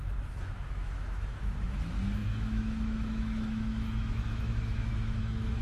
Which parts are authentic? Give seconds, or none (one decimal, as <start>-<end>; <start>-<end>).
none